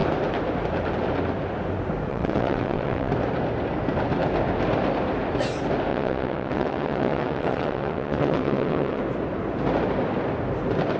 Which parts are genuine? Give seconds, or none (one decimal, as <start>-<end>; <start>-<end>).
0.0-2.1; 3.1-5.9; 9.0-11.0